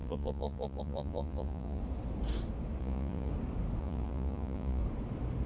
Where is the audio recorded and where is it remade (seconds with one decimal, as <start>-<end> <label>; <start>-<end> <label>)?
0.0-1.8 remade; 1.8-2.8 recorded; 2.8-3.3 remade; 3.3-3.8 recorded; 3.8-4.8 remade; 4.8-5.5 recorded